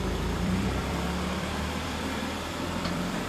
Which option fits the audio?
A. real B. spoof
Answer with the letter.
B